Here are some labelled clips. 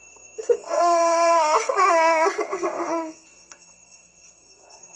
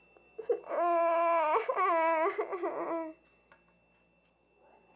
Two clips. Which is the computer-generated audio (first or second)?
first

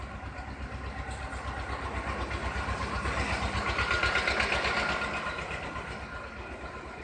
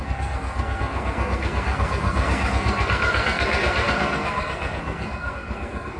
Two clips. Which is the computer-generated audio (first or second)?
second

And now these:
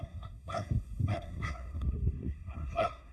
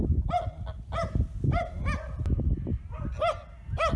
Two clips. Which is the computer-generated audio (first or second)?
first